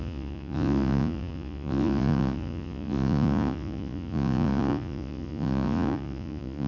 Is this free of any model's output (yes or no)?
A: no